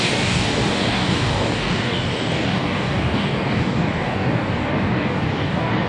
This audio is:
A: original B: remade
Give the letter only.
B